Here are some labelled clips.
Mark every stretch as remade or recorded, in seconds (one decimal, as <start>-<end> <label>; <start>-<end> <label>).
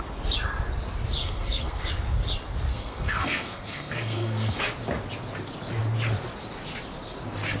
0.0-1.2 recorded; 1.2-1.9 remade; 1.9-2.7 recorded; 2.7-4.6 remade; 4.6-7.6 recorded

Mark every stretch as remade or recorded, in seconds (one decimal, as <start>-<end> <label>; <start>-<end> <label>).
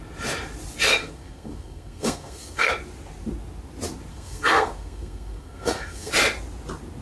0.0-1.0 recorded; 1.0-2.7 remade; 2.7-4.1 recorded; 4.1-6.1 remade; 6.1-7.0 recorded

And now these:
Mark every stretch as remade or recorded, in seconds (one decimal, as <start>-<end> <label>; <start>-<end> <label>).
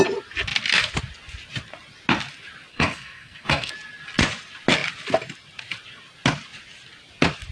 0.0-2.7 recorded; 2.7-3.7 remade; 3.7-7.5 recorded